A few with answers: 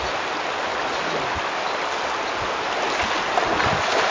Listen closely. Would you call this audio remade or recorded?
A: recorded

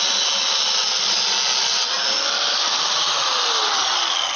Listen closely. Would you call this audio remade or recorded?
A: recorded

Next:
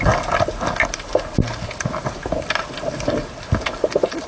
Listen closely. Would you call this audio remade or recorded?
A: recorded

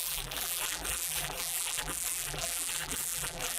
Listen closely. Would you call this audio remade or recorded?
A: remade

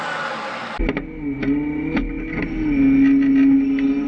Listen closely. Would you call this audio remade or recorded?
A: recorded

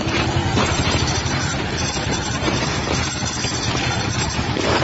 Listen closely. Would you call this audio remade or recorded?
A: remade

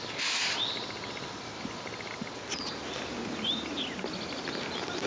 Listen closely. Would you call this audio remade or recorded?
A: recorded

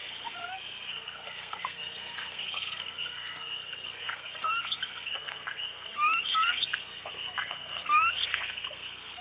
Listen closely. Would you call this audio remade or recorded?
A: remade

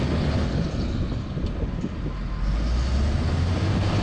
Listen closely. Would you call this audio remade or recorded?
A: recorded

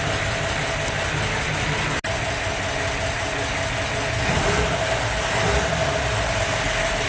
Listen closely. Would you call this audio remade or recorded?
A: recorded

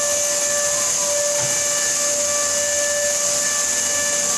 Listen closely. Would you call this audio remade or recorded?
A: recorded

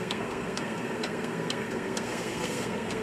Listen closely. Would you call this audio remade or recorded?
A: remade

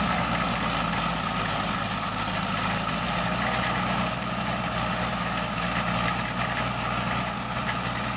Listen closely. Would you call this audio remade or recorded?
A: recorded